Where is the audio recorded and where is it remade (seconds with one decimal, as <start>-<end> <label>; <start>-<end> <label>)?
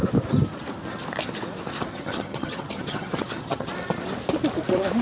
0.0-1.9 recorded; 1.9-3.7 remade; 3.7-5.0 recorded